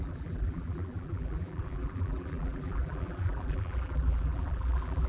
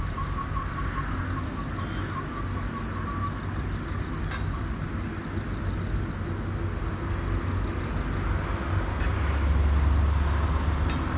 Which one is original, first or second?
second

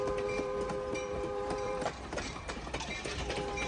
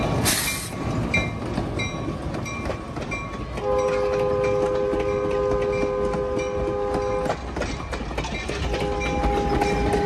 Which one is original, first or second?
second